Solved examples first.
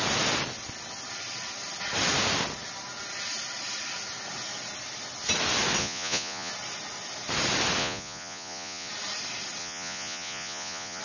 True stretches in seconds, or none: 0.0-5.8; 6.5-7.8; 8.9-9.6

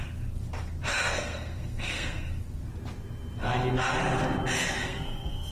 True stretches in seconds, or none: 0.0-0.9; 2.4-4.8

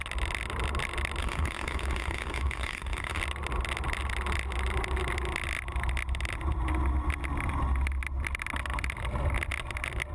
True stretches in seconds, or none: 0.0-1.2; 3.2-10.1

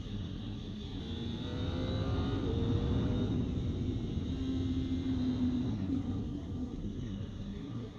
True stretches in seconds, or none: 1.0-5.7